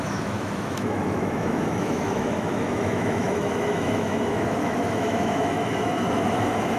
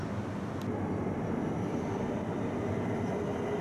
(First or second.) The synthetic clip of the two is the first